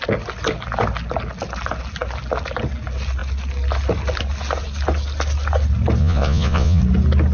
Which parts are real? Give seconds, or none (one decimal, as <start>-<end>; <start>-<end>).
0.0-6.0; 6.8-7.3